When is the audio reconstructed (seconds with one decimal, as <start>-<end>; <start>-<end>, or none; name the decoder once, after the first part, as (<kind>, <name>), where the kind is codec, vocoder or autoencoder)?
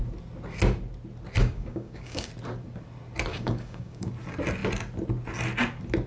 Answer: 1.4-2.3 (codec, DAC); 3.3-4.1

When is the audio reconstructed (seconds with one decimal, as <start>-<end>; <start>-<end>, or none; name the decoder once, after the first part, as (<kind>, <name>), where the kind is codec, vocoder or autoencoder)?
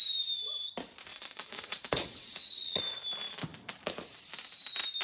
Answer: 1.1-2.8 (vocoder, WaveNeXt)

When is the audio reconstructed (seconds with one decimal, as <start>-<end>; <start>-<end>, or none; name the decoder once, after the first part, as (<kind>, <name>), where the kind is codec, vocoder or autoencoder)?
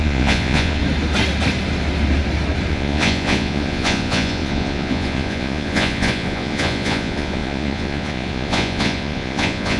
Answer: 0.0-0.8 (vocoder, Vocos); 2.7-9.8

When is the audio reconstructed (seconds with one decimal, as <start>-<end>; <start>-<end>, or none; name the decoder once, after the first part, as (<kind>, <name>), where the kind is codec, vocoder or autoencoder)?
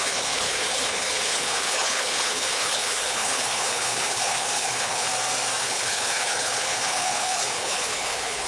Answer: 0.0-5.1 (codec, HILCodec); 5.6-8.5